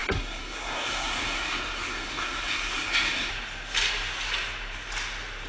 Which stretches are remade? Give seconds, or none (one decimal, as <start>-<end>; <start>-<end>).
0.0-3.3